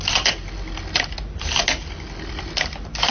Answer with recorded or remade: recorded